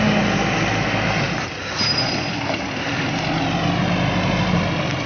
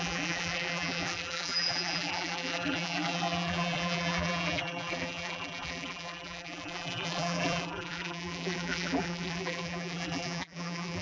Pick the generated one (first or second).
second